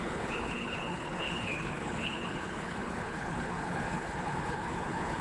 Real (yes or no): no